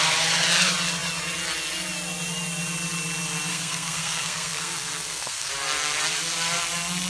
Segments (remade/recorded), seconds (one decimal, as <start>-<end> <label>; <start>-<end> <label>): 0.0-3.5 recorded; 3.5-5.5 remade; 5.5-7.1 recorded

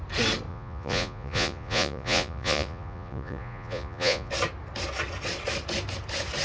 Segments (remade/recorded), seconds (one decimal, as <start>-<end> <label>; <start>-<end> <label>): 0.0-0.5 recorded; 0.5-4.3 remade; 4.3-6.4 recorded

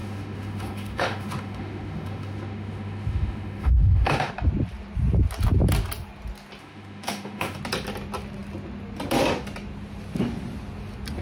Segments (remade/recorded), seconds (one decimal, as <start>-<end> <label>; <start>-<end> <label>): 0.0-4.3 remade; 4.3-6.6 recorded; 6.6-7.6 remade; 7.6-11.2 recorded

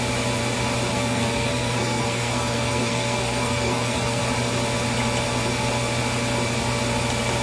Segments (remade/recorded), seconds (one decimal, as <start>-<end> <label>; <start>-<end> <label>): 0.0-0.9 recorded; 0.9-4.2 remade; 4.2-7.4 recorded